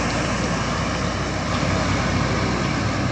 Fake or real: real